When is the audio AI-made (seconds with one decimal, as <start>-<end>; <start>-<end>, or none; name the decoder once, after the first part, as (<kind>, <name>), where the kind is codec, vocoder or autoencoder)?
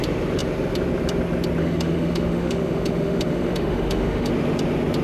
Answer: 1.6-4.3 (autoencoder, DAC-VAE)